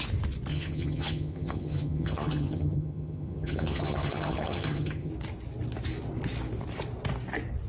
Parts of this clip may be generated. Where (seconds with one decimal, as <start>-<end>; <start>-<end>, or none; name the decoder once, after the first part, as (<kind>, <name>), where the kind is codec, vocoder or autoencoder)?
0.5-5.1 (vocoder, HiFi-GAN)

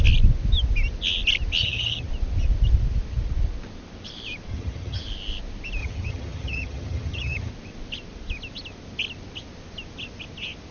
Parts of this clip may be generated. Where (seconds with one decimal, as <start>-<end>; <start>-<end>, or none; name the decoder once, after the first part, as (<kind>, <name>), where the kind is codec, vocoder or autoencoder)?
1.6-2.1 (vocoder, HiFi-GAN); 4.5-5.0; 5.8-7.5

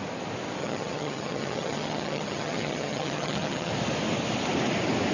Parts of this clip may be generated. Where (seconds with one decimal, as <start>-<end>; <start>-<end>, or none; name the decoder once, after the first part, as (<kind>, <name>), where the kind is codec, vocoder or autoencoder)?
0.6-3.7 (vocoder, HiFi-GAN)

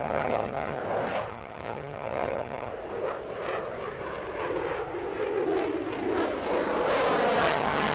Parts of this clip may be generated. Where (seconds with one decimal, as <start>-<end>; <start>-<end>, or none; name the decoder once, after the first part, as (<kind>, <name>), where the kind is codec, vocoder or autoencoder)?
0.0-0.8 (vocoder, HiFi-GAN); 1.3-2.7; 7.4-7.9

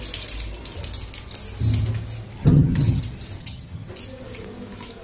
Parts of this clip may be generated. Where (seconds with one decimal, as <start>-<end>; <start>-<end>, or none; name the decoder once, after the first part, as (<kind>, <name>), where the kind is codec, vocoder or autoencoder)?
2.4-3.0 (vocoder, HiFi-GAN); 3.4-3.9

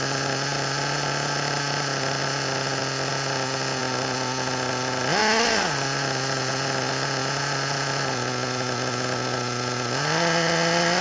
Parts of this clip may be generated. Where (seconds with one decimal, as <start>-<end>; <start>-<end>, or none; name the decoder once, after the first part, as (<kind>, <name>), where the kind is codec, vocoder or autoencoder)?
none

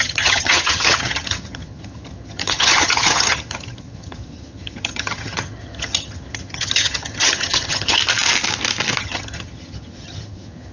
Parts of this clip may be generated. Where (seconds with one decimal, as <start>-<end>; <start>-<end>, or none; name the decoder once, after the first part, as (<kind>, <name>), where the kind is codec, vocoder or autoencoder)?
0.0-8.0 (vocoder, HiFi-GAN); 9.0-10.7

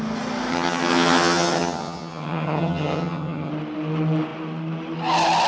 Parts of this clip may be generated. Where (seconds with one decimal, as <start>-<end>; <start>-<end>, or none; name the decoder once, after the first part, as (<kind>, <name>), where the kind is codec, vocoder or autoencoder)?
0.5-3.5 (vocoder, HiFi-GAN)